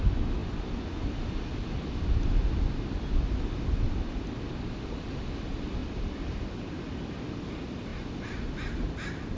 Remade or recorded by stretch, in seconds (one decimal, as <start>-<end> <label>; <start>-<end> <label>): 0.0-5.8 recorded; 5.8-7.1 remade; 7.1-9.4 recorded